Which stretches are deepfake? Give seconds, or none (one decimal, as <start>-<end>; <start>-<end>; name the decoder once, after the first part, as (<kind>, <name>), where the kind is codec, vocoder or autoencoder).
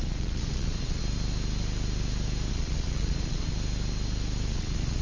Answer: 0.0-1.0 (vocoder, Vocos); 2.5-3.5; 4.5-5.0